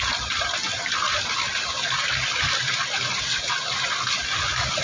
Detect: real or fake real